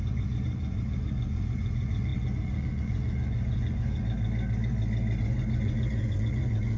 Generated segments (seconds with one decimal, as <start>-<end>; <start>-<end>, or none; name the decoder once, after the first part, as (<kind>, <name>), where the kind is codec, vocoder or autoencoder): 0.0-4.0 (vocoder, Vocos); 5.2-6.8